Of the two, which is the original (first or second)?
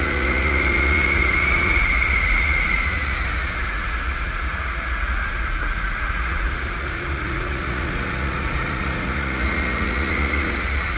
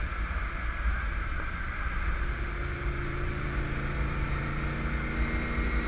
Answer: second